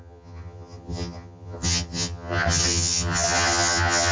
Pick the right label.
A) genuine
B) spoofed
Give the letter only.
B